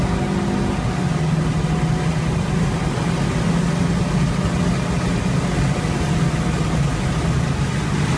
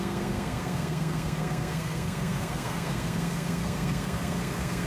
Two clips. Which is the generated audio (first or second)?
second